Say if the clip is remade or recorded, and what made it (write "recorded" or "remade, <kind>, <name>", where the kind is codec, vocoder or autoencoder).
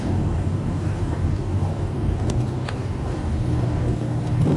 remade, codec, DAC